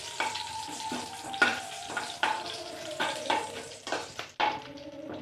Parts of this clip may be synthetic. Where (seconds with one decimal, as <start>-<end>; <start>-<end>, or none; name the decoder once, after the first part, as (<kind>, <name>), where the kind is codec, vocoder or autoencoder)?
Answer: 1.5-4.2 (vocoder, BigVGAN v2)